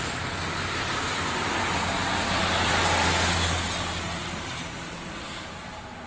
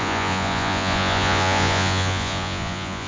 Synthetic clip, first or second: second